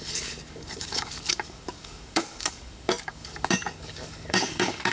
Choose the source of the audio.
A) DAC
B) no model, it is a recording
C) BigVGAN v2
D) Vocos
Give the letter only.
A